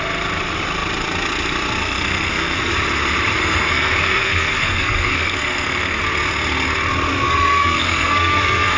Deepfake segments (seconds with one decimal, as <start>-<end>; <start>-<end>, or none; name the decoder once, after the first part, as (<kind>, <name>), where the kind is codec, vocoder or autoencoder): 1.8-2.7 (codec, SNAC); 3.4-6.0; 7.1-8.8